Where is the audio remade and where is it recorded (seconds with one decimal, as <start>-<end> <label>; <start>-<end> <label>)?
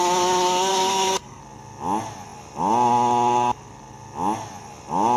0.0-0.7 recorded; 0.7-1.4 remade; 1.4-5.2 recorded